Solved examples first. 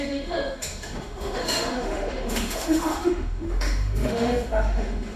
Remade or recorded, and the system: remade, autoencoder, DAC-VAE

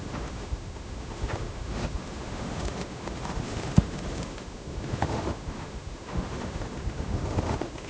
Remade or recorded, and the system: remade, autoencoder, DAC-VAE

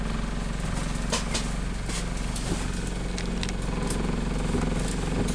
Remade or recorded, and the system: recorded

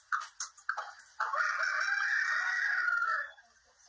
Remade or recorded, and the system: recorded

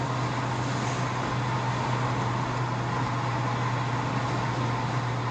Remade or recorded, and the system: recorded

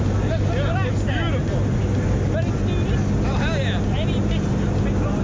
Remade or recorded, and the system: recorded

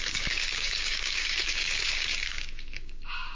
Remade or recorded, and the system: remade, codec, DAC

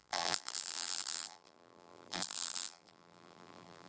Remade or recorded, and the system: remade, vocoder, BigVGAN v2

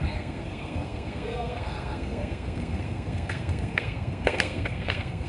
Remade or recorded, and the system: remade, codec, SNAC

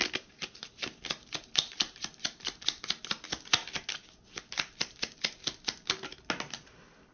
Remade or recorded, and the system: recorded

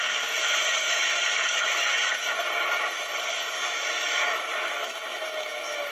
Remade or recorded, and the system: remade, autoencoder, DAC-VAE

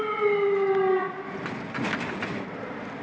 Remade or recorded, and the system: recorded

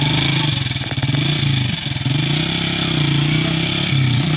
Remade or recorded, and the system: recorded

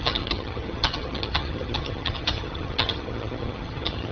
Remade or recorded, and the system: remade, vocoder, HiFi-GAN